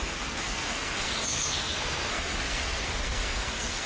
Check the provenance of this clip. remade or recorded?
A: remade